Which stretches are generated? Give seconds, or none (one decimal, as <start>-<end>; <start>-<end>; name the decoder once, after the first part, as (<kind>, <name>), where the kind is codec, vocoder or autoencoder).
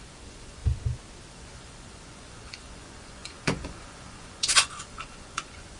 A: 0.0-0.6 (vocoder, Vocos); 1.3-5.8